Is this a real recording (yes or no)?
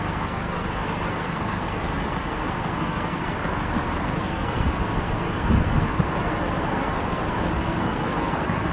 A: no